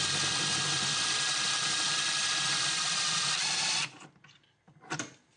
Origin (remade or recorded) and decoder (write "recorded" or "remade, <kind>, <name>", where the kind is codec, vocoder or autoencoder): remade, vocoder, BigVGAN v2